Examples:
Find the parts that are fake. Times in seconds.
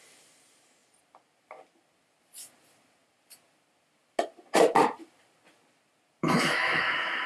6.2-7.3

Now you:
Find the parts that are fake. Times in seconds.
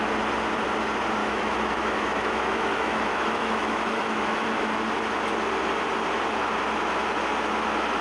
1.2-4.8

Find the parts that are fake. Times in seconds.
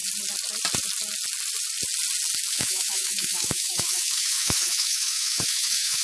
2.5-6.0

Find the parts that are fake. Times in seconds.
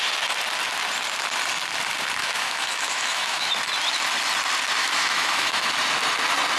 2.2-3.5; 4.8-5.7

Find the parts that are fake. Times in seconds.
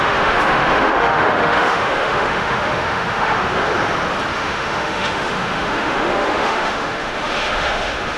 0.0-3.7; 4.3-8.2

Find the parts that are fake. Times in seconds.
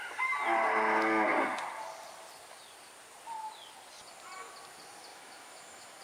5.1-6.0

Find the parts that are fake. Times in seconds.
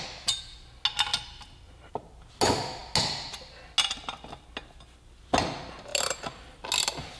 none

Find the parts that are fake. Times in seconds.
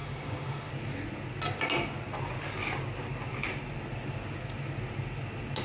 0.0-0.7